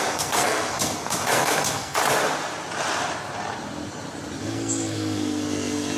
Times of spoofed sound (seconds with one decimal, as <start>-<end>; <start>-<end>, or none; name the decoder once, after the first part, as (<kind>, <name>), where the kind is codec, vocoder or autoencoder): 0.0-2.0 (codec, SNAC); 4.4-6.0